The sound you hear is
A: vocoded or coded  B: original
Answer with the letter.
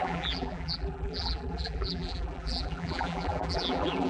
A